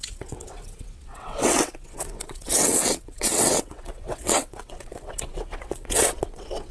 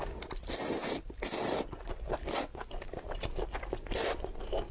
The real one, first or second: second